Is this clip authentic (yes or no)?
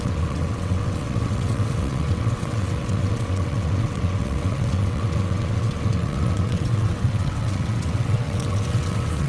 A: no